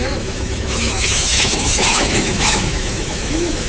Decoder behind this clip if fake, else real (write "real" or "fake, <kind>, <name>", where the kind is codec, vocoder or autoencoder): fake, autoencoder, DAC-VAE